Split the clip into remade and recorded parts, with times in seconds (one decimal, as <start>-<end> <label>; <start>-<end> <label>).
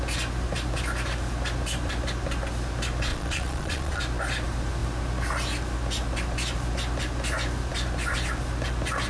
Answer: 0.0-3.1 recorded; 3.1-4.0 remade; 4.0-9.1 recorded